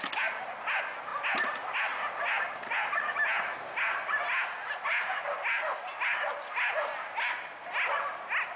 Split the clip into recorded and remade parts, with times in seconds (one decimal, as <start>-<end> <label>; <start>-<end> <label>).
0.0-8.6 recorded